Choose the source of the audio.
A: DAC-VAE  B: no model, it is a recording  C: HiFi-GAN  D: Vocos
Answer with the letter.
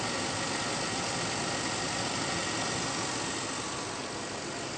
B